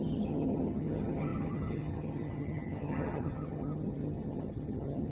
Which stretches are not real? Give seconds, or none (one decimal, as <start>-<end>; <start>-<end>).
0.0-5.1